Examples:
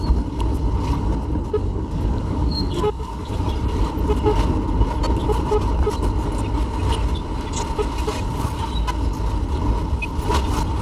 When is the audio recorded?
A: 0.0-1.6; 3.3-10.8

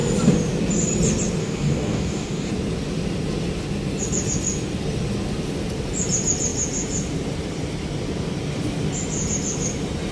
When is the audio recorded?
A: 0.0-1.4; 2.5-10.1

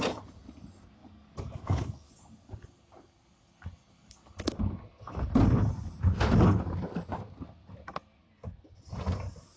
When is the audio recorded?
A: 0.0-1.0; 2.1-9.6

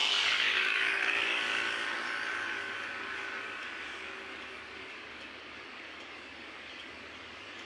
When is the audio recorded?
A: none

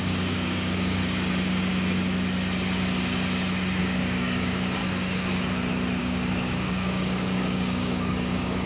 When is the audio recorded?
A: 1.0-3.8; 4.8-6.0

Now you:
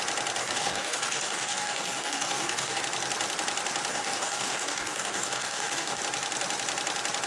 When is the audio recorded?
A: 0.0-0.4; 2.8-3.9; 6.0-7.3